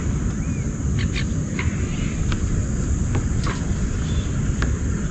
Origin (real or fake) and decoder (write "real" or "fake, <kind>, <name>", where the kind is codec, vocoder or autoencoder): real